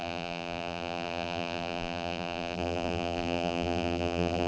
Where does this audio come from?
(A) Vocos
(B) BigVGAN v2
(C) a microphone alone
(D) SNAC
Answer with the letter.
B